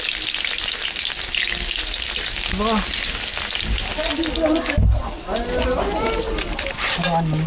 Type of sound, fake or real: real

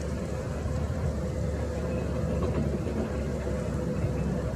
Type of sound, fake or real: real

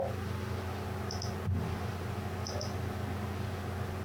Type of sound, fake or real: real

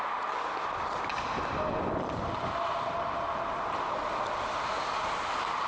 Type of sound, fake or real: real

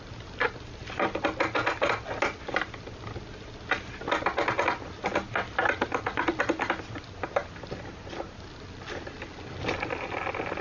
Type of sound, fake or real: real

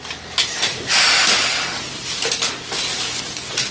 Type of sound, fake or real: real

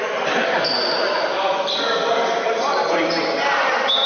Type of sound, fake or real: real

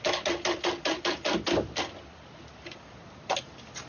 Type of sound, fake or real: real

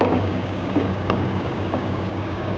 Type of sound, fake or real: fake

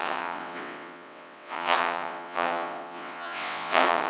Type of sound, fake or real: fake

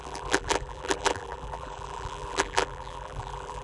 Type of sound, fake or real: fake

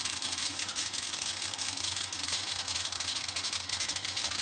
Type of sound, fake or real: fake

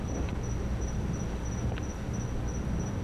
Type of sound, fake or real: real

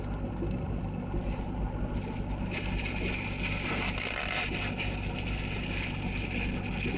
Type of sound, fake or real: real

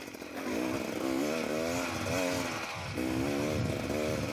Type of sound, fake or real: real